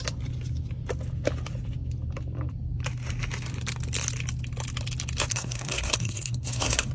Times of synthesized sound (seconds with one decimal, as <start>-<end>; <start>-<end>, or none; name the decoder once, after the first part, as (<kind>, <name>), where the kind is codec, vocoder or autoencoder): 5.3-6.9 (codec, SNAC)